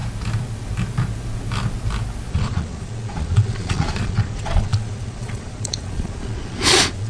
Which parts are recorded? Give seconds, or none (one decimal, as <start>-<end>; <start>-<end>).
0.0-2.3